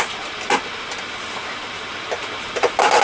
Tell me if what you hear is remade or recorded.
recorded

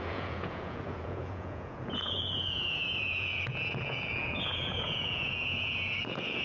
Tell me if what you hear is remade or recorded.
remade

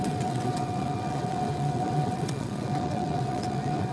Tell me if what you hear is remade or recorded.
remade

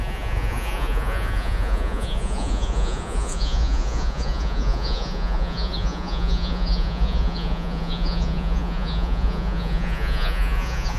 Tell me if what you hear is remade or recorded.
remade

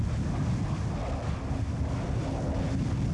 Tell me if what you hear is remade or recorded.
recorded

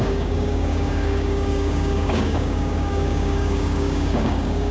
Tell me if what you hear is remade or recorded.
remade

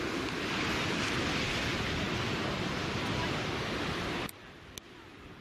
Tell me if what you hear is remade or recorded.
recorded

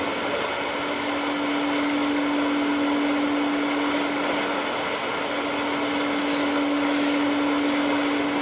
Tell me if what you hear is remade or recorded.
recorded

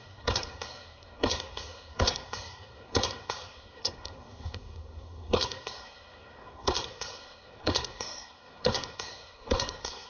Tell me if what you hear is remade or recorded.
remade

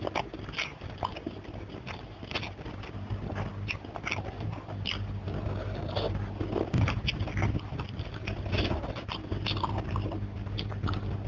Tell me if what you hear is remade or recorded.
recorded